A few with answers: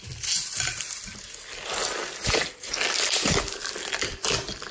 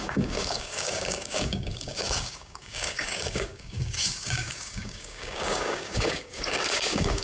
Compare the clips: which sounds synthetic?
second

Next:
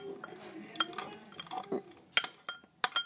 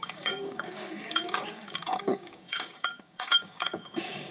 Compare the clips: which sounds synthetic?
second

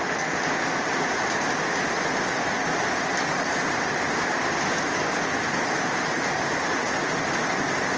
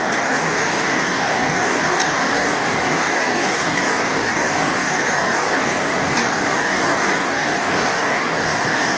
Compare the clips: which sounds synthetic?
second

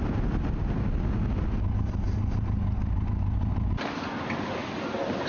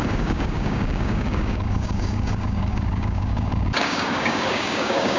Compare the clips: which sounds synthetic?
second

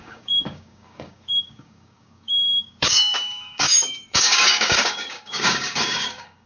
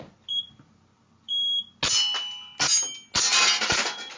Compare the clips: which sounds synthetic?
first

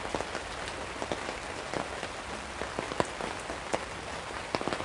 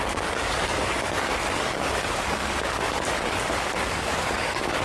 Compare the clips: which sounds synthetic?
second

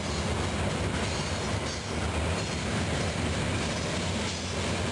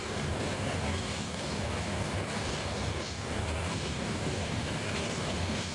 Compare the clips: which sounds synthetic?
second